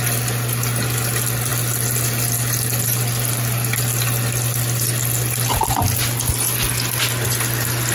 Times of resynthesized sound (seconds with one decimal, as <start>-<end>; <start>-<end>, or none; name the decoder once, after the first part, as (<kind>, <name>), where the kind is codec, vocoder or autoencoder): none